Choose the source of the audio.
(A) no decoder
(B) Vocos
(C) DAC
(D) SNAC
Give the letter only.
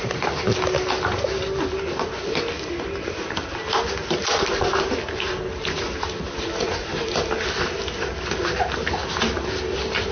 A